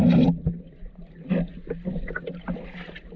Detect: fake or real real